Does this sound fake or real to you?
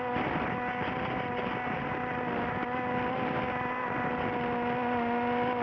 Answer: fake